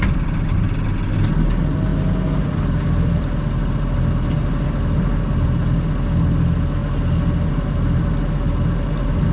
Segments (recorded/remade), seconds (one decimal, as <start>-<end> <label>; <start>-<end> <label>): 0.0-9.3 recorded

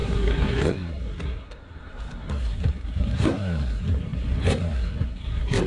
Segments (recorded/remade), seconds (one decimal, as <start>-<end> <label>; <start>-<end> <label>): 0.0-5.7 remade

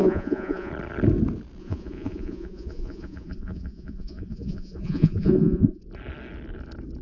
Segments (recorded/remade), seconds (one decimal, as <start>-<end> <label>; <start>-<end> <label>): 0.0-0.7 remade; 0.7-1.6 recorded; 1.6-5.8 remade; 5.8-7.0 recorded

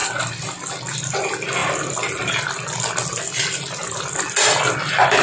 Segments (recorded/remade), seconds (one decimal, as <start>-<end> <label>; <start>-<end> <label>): 0.0-5.2 recorded

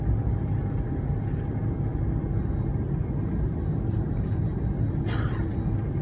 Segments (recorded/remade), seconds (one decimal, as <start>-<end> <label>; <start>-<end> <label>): 0.0-6.0 recorded

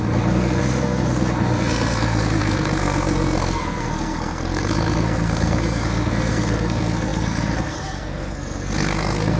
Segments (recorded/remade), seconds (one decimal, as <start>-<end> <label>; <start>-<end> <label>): 0.0-9.4 remade

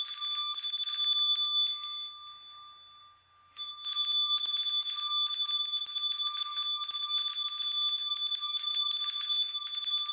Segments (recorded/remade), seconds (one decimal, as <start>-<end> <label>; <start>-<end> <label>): 0.0-8.7 recorded; 8.7-9.3 remade; 9.3-10.1 recorded